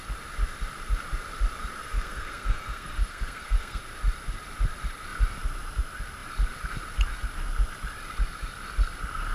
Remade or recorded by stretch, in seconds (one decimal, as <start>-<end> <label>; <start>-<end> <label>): 0.0-1.8 recorded; 1.8-3.8 remade; 3.8-9.3 recorded